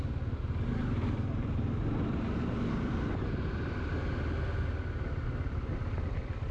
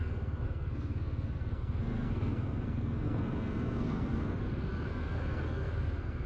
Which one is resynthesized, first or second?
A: second